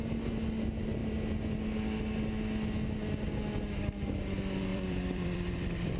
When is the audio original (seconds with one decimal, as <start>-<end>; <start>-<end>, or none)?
0.0-4.7